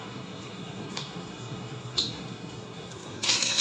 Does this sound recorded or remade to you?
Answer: remade